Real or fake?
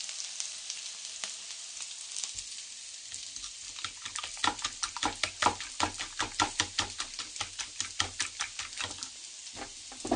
real